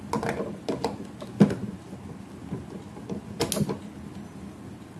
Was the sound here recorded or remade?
recorded